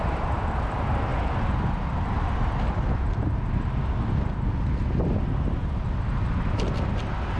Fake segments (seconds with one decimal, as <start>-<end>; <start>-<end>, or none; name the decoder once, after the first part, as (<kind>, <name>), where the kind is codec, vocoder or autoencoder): none